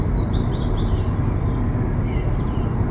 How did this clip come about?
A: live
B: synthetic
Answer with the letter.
A